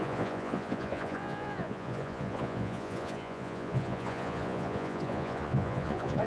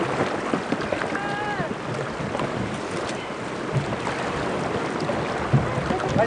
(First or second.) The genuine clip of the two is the second